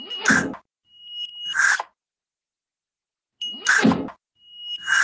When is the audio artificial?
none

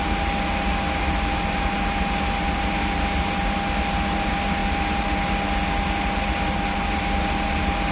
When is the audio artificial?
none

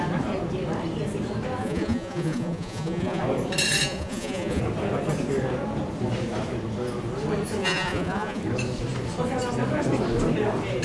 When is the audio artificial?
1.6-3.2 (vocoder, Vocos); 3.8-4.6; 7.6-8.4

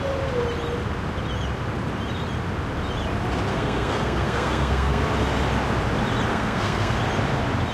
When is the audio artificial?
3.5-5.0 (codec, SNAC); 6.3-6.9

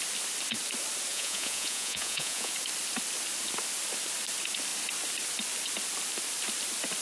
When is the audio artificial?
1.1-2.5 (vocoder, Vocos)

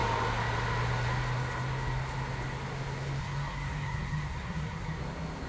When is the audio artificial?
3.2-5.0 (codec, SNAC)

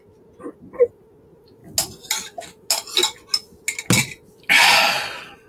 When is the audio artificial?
none

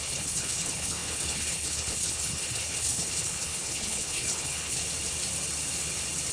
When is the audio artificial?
0.0-4.8 (codec, HILCodec)